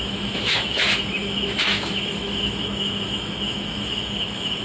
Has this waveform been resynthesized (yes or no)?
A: yes